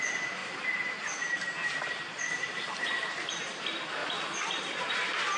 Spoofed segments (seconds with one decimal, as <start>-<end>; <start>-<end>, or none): 0.4-3.6